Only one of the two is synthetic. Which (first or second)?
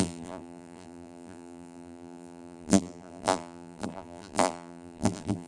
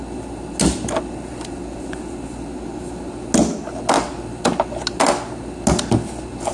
first